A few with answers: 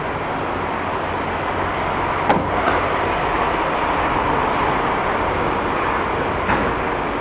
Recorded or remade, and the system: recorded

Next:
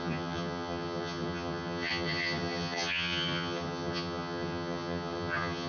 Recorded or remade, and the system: remade, vocoder, HiFi-GAN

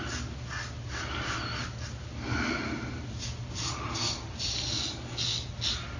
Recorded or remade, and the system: recorded